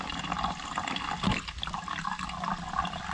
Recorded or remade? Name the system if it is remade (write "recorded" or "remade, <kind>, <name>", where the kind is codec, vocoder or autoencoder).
recorded